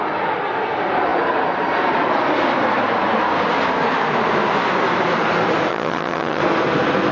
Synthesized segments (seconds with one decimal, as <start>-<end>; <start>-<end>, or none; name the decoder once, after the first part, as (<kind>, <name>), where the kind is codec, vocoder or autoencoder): 5.7-6.4 (vocoder, HiFi-GAN)